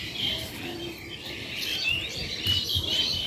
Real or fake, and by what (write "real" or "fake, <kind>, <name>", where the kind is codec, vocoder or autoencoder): real